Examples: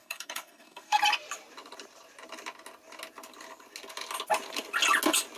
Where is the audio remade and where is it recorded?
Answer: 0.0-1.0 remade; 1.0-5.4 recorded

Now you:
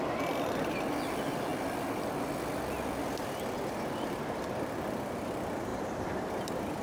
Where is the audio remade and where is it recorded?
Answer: 0.0-5.7 recorded; 5.7-6.8 remade